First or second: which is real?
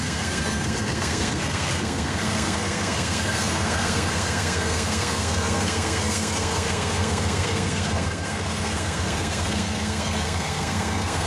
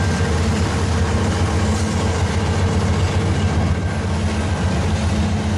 second